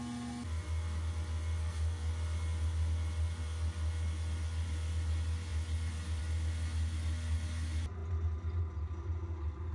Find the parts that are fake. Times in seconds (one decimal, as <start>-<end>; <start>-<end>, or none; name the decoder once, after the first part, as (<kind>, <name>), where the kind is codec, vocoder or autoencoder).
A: 1.6-2.1 (codec, SNAC)